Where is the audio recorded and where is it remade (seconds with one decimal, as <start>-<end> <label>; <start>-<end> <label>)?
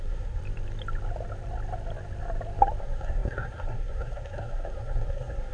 0.0-0.4 remade; 0.4-2.8 recorded; 2.8-5.5 remade